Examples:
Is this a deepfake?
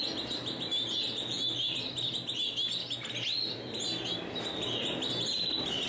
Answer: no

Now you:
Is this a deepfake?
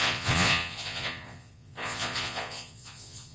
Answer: yes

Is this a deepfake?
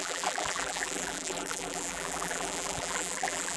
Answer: yes